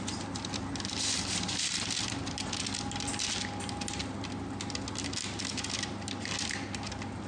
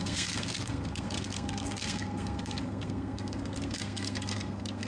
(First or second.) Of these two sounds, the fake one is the second